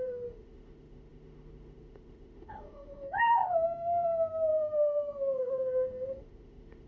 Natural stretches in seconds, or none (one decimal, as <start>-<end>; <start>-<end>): none